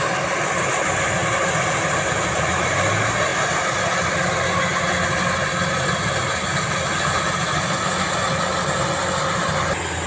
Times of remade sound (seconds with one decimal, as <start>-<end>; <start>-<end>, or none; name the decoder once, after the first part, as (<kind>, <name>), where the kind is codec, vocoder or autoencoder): none